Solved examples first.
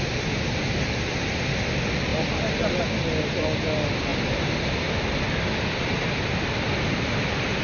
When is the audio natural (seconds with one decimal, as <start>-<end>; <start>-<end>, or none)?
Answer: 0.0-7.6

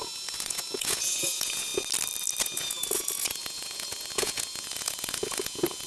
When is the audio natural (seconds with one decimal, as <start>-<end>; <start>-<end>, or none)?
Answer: 1.7-2.4

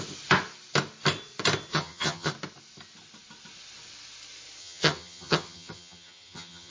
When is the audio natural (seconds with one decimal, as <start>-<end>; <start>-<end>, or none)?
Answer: 0.0-1.7; 2.3-4.6

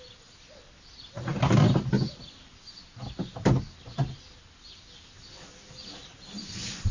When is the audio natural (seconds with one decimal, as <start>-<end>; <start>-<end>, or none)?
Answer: 0.0-6.9

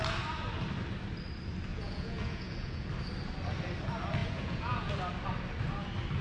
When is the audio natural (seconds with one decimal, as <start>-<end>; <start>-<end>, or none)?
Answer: 0.0-1.7; 2.9-4.2; 4.9-6.2

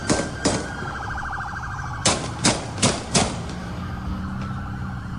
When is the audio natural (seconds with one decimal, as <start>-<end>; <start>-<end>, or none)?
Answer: 0.0-3.6; 4.2-5.2

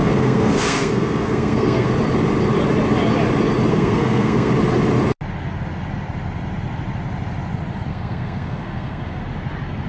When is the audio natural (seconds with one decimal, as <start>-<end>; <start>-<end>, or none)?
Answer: 1.9-3.7; 4.5-7.9; 9.2-9.9

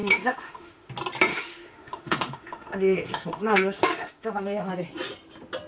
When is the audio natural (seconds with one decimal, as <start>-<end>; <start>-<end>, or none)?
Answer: 0.9-1.3; 4.7-5.7